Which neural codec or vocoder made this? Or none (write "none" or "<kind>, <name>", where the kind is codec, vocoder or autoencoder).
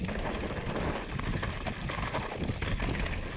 none